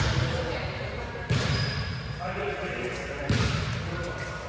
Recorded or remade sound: recorded